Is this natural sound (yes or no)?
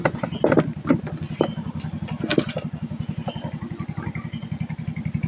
yes